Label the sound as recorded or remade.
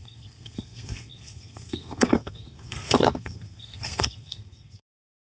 remade